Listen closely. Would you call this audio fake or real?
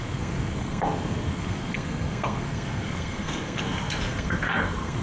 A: fake